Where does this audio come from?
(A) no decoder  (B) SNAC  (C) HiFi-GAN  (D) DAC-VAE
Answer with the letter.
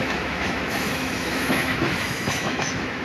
D